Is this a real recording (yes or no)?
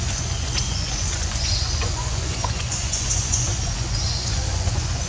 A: no